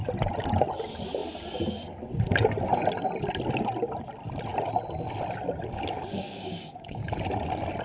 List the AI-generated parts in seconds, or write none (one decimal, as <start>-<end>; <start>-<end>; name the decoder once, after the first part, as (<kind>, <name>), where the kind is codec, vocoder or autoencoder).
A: 6.1-7.1 (codec, DAC)